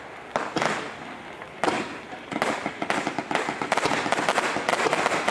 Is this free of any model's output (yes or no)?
yes